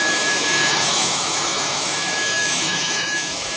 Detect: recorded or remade remade